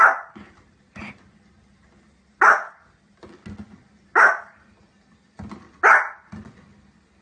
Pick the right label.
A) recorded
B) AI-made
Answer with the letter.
A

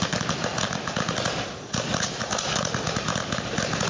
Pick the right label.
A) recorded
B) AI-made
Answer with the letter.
A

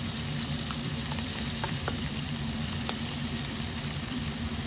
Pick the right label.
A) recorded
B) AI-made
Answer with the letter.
B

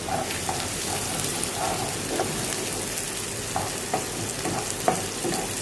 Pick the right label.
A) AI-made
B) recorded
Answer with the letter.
B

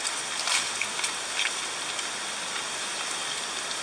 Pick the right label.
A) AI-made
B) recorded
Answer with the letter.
B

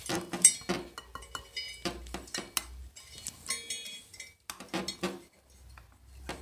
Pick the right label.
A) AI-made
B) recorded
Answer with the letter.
B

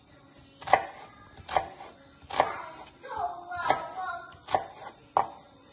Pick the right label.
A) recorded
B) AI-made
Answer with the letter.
A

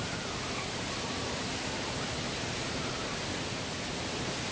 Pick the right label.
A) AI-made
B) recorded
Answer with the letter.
B